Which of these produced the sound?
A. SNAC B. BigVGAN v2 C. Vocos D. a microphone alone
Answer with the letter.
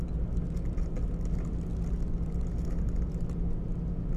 D